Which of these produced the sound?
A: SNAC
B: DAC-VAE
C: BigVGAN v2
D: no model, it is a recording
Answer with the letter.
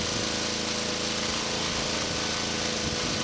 D